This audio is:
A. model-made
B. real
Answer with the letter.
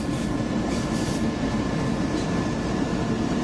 A